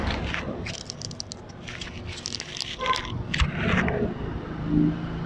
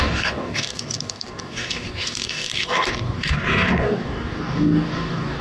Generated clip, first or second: second